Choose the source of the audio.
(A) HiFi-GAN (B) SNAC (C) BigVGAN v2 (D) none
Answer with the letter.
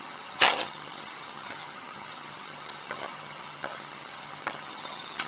A